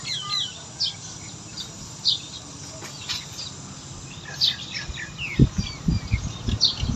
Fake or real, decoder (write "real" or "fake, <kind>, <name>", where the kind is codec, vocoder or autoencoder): real